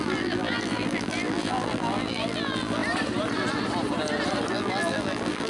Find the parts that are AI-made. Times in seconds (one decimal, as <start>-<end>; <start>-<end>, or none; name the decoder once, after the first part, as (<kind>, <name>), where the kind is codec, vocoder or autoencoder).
0.0-2.8 (vocoder, BigVGAN v2); 4.5-5.5